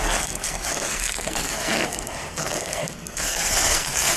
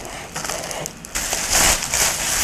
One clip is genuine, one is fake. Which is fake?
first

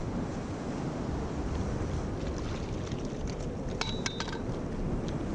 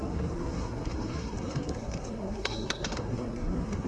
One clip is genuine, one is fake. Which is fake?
second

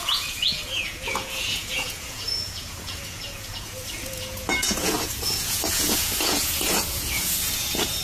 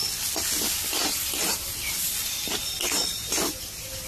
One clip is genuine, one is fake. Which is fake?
first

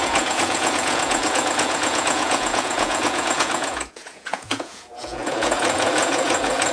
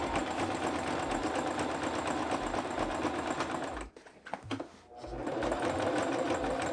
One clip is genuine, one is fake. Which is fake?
first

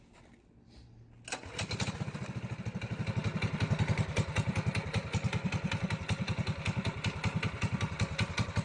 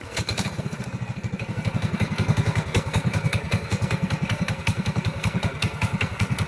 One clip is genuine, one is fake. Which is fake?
second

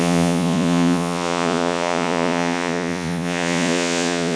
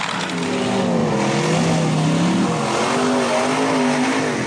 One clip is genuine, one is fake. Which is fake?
first